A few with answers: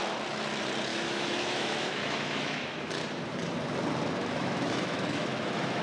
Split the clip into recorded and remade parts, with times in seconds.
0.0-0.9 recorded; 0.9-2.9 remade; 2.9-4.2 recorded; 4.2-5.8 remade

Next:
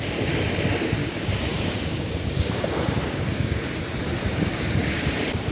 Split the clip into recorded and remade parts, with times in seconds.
0.0-1.0 recorded; 1.0-3.6 remade; 3.6-4.2 recorded; 4.2-5.0 remade; 5.0-5.5 recorded

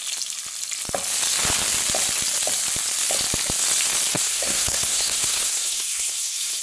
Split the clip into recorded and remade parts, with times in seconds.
0.0-4.1 recorded; 4.1-6.6 remade

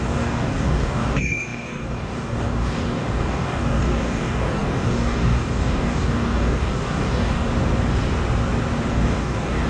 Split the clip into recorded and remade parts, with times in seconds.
0.0-7.5 remade; 7.5-8.9 recorded; 8.9-9.7 remade

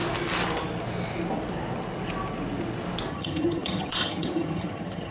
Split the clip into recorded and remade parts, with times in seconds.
0.0-3.1 recorded; 3.1-5.1 remade

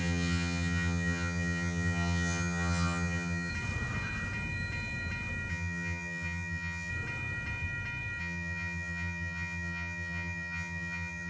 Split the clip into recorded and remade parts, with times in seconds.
0.0-3.5 remade; 3.5-5.5 recorded; 5.5-6.9 remade; 6.9-8.2 recorded; 8.2-11.3 remade